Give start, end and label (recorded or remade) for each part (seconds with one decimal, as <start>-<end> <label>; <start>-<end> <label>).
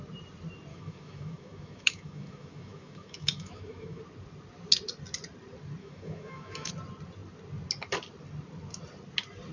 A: 0.0-0.7 recorded; 0.7-4.0 remade; 4.0-5.8 recorded; 5.8-6.7 remade; 6.7-9.5 recorded